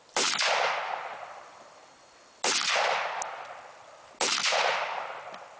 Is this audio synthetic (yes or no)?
no